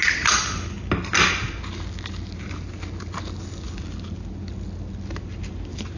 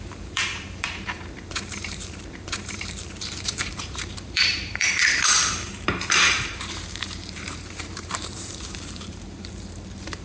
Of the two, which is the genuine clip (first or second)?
first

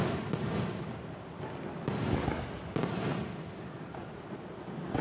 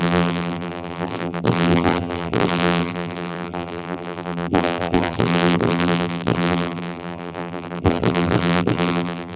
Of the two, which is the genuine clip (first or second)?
first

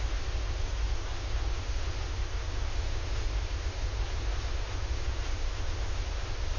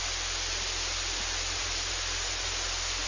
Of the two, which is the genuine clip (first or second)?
second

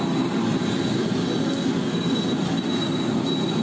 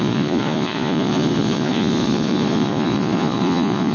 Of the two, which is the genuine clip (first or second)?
first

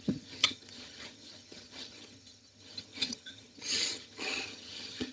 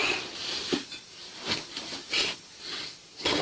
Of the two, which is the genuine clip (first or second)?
second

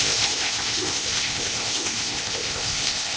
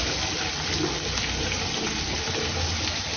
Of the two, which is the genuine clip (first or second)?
second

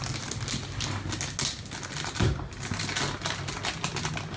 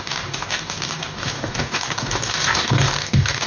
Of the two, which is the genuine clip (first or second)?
first